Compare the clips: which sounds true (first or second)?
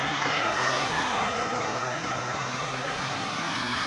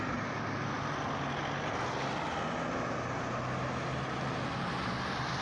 second